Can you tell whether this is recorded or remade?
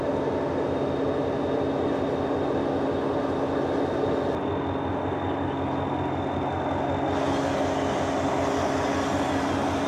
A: recorded